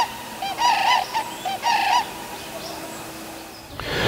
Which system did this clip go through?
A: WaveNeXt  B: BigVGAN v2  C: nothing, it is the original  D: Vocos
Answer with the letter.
C